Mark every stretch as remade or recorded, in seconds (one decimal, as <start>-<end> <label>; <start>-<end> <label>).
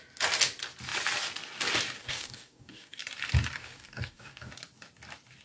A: 0.0-2.0 recorded; 2.0-3.0 remade; 3.0-3.6 recorded; 3.6-4.5 remade; 4.5-5.4 recorded